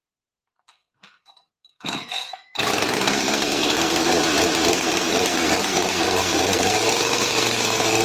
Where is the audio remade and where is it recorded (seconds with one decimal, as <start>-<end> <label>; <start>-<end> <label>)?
0.0-4.1 remade; 4.1-4.7 recorded; 4.7-8.0 remade